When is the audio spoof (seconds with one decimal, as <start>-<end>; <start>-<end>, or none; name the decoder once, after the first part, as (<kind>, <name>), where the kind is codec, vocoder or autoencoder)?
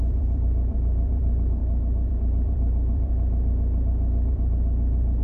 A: 0.0-1.6 (vocoder, BigVGAN v2); 2.1-3.1; 4.3-5.2